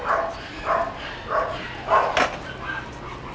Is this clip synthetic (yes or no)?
no